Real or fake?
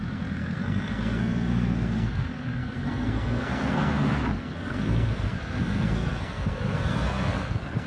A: fake